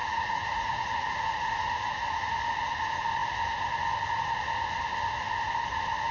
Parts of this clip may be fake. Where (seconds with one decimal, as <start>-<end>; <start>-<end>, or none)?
0.0-2.0